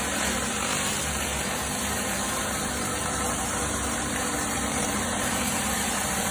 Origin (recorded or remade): remade